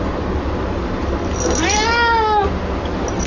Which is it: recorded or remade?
recorded